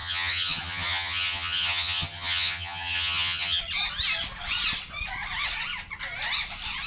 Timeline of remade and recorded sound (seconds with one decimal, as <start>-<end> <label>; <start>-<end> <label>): 0.0-3.6 remade; 3.6-6.9 recorded